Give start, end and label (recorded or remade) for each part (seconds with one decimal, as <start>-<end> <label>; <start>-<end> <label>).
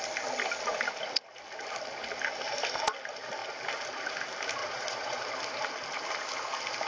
0.0-4.6 recorded; 4.6-5.2 remade; 5.2-6.9 recorded